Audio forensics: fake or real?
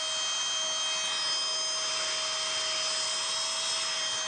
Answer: real